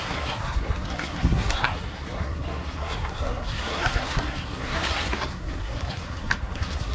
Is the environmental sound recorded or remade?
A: remade